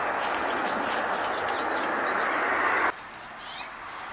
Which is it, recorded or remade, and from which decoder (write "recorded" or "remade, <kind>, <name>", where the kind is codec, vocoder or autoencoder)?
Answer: recorded